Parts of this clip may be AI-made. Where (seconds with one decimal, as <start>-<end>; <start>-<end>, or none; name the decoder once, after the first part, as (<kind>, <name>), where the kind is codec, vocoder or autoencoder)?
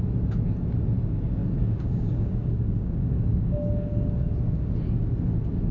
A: 1.4-4.8 (codec, DAC)